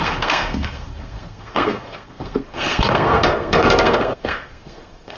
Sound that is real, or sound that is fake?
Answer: fake